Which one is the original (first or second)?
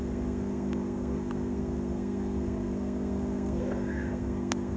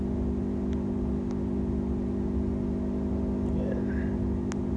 second